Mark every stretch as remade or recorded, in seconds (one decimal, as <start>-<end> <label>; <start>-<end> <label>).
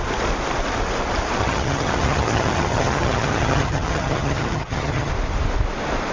0.0-1.4 recorded; 1.4-5.1 remade; 5.1-6.1 recorded